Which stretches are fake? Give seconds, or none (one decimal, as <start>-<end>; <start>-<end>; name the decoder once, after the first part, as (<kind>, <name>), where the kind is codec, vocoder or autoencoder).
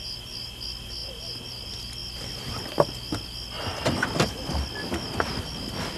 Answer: none